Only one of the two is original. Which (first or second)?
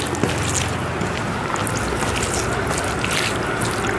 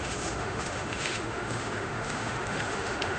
first